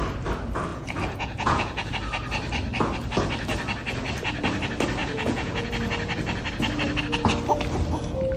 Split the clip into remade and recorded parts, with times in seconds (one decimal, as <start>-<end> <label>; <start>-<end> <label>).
0.0-0.7 recorded; 0.7-1.9 remade; 1.9-5.0 recorded; 5.0-5.7 remade; 5.7-8.4 recorded